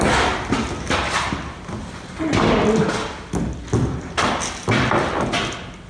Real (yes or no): yes